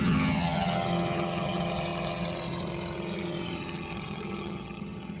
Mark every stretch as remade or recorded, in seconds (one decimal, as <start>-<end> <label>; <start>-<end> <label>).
0.0-5.2 remade